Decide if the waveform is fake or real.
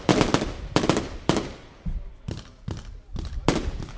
real